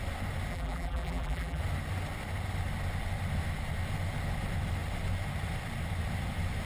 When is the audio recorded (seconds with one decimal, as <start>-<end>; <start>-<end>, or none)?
0.0-0.5; 1.6-6.7

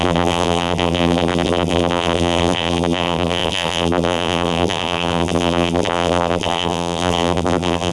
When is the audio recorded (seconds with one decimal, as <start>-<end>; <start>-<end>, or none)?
none

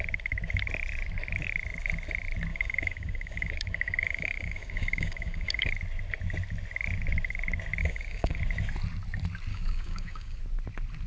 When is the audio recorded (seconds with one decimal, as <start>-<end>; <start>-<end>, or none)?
0.0-2.5; 5.7-7.8; 8.4-9.5; 10.4-11.1

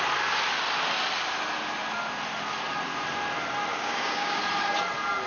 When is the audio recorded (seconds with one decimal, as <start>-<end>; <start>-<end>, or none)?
0.0-3.7; 4.4-5.3

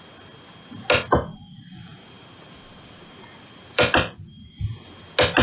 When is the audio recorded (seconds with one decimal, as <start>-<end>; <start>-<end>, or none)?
0.0-1.3; 4.5-5.4